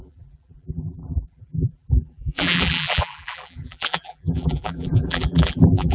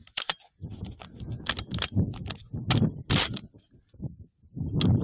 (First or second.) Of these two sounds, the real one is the second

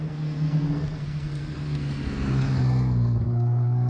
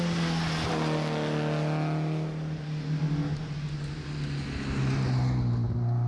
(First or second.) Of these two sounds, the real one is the second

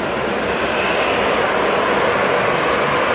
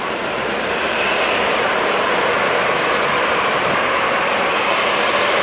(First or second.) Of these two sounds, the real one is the first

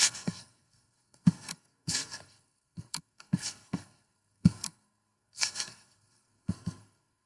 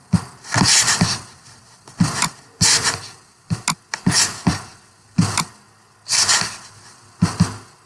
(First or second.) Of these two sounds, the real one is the second